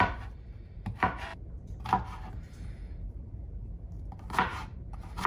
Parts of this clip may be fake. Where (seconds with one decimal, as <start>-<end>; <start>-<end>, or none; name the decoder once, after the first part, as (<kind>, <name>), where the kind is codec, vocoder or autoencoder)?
0.0-5.3 (vocoder, BigVGAN v2)

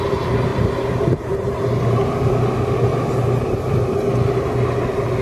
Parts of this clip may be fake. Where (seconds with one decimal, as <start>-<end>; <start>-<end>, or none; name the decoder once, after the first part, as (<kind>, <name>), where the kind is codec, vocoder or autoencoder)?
0.5-2.3 (vocoder, BigVGAN v2); 2.9-3.7

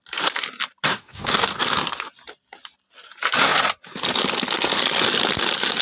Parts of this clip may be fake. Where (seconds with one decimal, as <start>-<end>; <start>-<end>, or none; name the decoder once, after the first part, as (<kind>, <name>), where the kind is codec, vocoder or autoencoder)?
0.9-1.6 (codec, DAC)

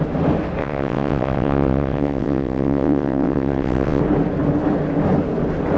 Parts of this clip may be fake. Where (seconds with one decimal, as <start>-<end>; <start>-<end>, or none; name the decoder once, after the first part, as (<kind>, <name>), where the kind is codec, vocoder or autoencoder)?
0.6-4.0 (vocoder, WaveNeXt)

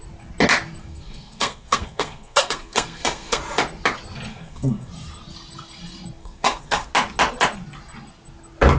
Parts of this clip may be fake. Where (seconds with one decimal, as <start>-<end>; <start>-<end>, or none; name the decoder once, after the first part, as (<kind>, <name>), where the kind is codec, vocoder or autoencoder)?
0.8-3.4 (codec, SNAC); 4.3-4.9; 6.2-6.9

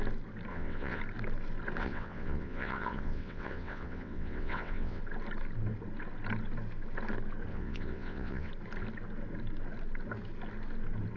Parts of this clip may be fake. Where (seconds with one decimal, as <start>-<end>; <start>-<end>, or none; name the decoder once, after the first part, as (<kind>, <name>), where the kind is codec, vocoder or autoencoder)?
0.5-1.0 (vocoder, WaveNeXt); 1.8-5.0; 7.5-8.5

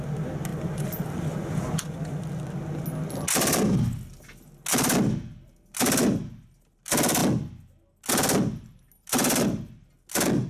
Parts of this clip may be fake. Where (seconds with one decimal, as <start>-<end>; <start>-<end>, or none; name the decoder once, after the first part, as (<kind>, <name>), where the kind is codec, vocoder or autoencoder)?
none

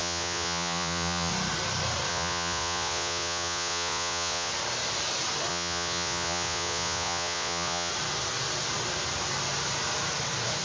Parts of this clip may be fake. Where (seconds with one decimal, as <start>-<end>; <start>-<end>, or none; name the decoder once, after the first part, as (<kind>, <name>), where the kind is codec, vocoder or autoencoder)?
0.0-1.3 (vocoder, Vocos); 2.1-4.5; 5.5-7.9